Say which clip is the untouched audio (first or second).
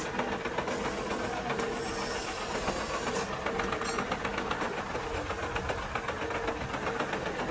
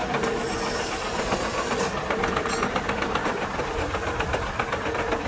first